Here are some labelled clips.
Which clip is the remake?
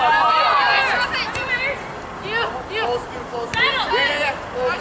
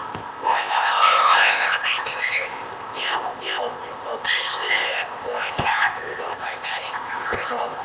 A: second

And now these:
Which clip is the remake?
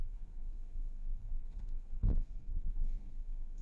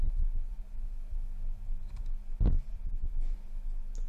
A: first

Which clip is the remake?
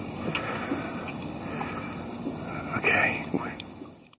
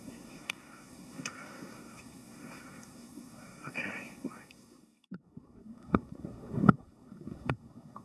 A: second